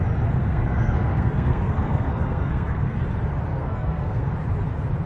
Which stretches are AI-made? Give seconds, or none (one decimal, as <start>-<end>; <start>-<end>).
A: 0.4-3.0; 3.5-4.3